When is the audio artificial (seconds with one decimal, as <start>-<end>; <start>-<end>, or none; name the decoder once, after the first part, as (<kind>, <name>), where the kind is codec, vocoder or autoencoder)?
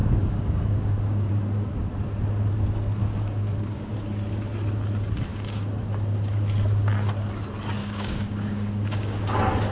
0.0-1.3 (codec, DAC); 3.0-3.9; 5.3-5.8; 7.8-9.2